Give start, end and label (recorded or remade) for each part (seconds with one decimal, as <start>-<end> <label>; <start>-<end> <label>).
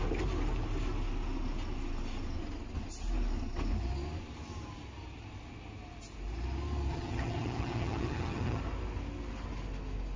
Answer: 0.0-6.9 recorded; 6.9-8.6 remade; 8.6-10.2 recorded